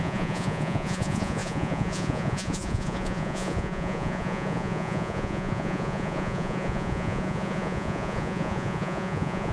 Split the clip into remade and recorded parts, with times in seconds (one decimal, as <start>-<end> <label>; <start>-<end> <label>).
0.0-9.5 remade